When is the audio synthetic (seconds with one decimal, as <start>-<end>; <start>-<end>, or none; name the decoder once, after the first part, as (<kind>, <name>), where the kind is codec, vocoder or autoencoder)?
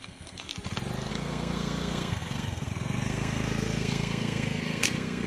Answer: 0.0-0.5 (codec, SNAC); 1.1-5.3